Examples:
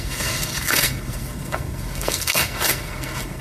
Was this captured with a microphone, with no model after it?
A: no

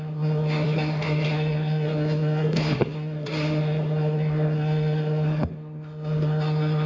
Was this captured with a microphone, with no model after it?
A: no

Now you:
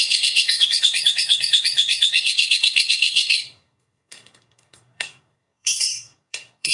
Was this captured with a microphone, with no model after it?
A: no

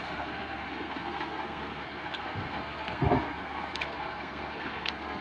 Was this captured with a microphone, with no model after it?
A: no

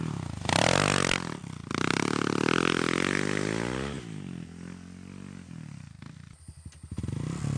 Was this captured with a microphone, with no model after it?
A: yes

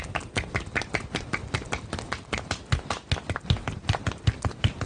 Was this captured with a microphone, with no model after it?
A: yes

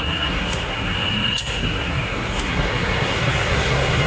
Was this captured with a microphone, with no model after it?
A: no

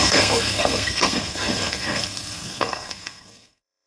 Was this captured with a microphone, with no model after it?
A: no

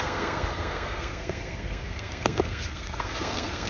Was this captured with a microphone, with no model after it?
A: no